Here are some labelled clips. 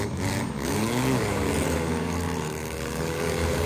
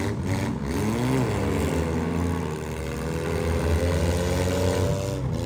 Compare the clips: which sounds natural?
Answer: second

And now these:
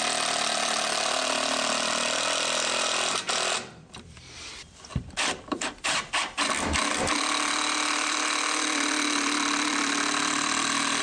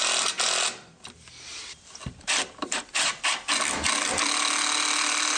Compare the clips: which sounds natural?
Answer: second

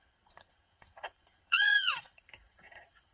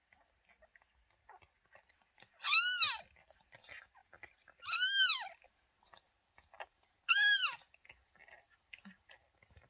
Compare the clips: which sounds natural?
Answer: second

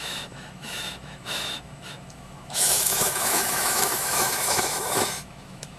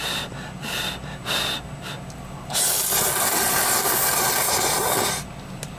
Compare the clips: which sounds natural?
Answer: second